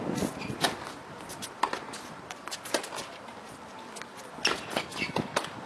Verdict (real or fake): real